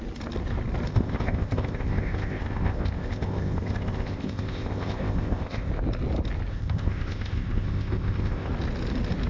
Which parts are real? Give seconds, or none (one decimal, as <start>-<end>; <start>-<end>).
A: 0.0-0.9; 5.7-6.5; 8.5-9.3